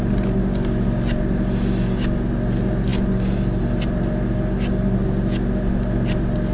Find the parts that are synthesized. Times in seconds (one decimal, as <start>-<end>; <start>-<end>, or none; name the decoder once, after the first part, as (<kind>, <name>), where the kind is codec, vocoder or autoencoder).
none